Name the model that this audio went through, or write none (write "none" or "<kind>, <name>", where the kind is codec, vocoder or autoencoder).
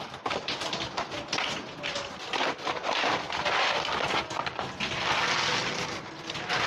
none